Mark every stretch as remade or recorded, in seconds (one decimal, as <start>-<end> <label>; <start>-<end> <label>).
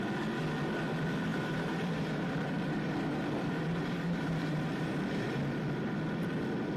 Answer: 0.0-1.3 recorded; 1.3-5.4 remade; 5.4-6.8 recorded